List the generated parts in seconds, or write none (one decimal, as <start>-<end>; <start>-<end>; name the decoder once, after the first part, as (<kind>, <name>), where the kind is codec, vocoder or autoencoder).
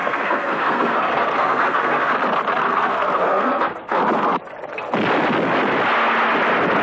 0.0-2.1 (codec, SNAC); 2.6-4.0